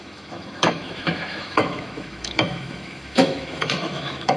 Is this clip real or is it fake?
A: fake